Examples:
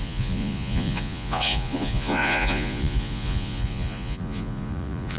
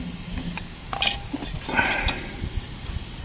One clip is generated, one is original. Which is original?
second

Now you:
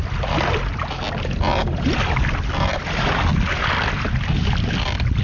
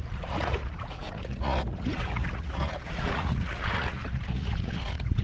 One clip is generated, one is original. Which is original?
first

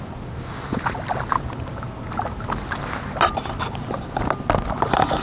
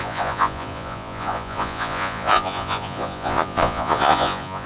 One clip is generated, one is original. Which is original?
first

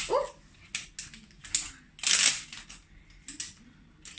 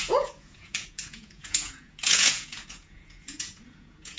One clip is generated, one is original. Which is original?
first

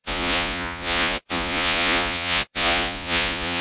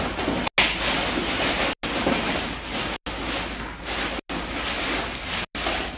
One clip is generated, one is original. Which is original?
second